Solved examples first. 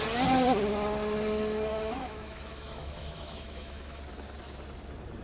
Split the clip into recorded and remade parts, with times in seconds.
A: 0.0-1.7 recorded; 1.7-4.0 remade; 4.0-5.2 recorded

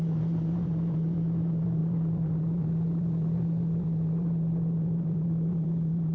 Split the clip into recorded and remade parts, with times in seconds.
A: 0.0-6.1 remade

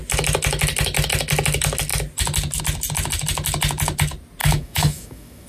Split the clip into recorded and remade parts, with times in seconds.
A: 0.0-4.4 recorded; 4.4-5.5 remade

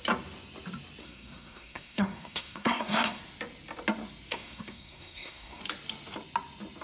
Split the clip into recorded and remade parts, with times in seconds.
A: 0.0-1.0 recorded; 1.0-3.2 remade; 3.2-4.3 recorded; 4.3-5.6 remade; 5.6-6.8 recorded

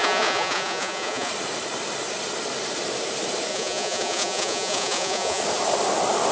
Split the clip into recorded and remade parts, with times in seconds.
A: 0.0-1.3 remade; 1.3-3.5 recorded; 3.5-5.4 remade; 5.4-6.3 recorded

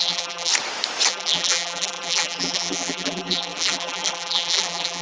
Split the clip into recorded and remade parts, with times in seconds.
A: 0.0-0.5 remade; 0.5-1.1 recorded; 1.1-5.0 remade

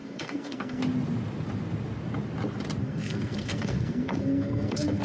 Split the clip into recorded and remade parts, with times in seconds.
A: 0.0-0.8 remade; 0.8-2.8 recorded; 2.8-5.0 remade